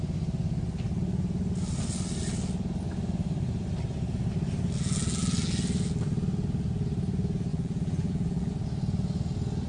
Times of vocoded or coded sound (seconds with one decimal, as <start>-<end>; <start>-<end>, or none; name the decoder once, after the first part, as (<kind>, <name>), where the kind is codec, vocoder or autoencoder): 7.5-8.5 (vocoder, BigVGAN v2)